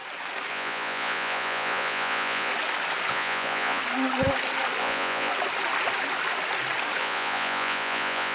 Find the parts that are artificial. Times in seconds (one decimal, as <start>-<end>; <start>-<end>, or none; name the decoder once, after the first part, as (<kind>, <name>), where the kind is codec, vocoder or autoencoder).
0.5-2.5 (vocoder, Vocos); 3.1-3.8; 4.8-5.3; 7.0-8.3